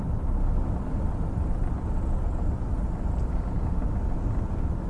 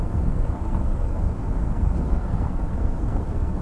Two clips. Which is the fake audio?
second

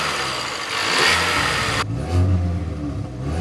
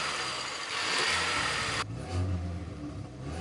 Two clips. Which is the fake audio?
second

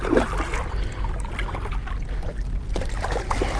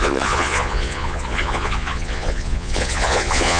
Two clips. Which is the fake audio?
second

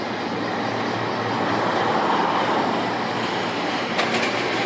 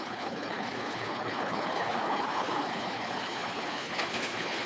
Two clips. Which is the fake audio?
second